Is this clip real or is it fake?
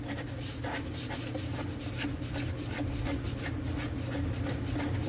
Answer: real